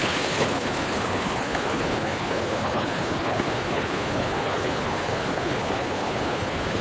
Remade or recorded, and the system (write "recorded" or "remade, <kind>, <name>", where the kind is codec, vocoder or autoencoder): remade, codec, HILCodec